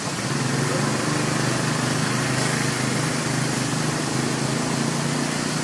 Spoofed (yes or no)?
no